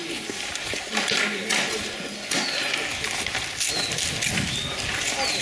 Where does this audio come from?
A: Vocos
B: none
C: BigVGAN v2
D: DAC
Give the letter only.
B